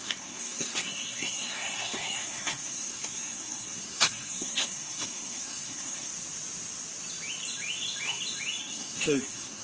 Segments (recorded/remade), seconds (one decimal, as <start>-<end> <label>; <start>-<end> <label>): 0.0-6.1 remade; 6.1-8.6 recorded; 8.6-9.6 remade